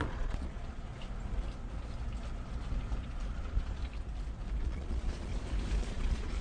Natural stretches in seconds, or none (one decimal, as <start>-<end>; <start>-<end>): 0.9-3.3; 3.8-4.6; 5.3-5.8